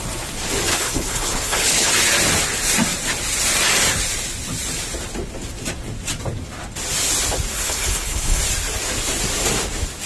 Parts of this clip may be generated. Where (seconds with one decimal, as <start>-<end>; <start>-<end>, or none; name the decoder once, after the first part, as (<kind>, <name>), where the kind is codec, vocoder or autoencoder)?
0.7-1.9 (codec, HILCodec); 7.5-8.4